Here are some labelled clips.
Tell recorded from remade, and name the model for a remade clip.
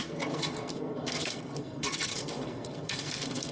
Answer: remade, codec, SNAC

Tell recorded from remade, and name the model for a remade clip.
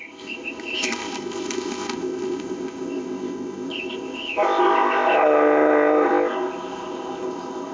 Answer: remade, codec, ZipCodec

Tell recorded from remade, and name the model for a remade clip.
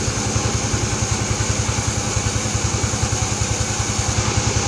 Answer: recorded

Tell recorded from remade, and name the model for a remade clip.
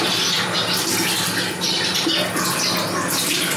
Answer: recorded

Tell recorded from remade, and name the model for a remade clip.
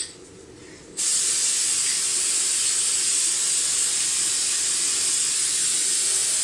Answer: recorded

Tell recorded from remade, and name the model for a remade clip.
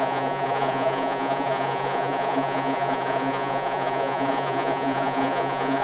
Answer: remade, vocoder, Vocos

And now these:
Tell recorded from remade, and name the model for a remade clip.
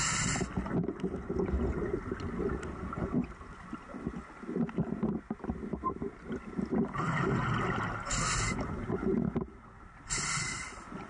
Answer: recorded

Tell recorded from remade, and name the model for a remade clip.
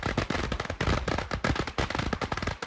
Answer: remade, vocoder, BigVGAN v2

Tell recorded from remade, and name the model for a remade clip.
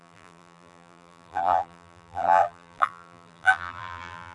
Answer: remade, vocoder, BigVGAN v2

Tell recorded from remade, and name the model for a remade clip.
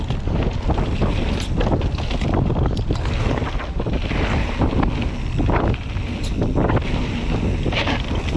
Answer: recorded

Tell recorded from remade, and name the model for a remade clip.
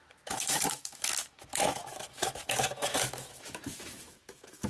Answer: remade, autoencoder, DAC-VAE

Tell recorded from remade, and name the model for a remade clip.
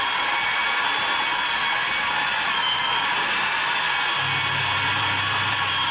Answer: recorded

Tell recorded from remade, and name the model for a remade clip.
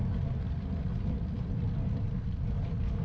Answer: recorded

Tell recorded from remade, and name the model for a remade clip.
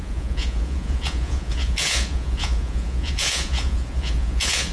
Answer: remade, vocoder, Vocos